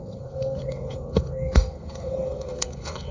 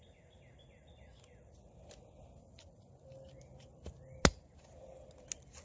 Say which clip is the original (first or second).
second